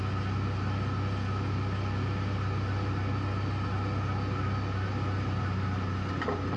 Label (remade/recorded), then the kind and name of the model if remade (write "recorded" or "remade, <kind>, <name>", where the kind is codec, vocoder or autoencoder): recorded